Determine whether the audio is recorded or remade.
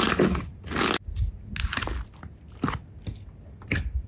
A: recorded